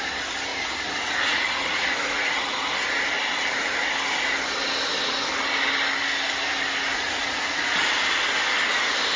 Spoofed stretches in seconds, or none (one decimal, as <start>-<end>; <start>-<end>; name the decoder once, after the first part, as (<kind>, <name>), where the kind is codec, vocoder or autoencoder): 0.5-2.7 (vocoder, Vocos); 6.9-7.8